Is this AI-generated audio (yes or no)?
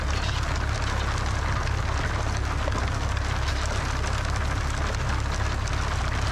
no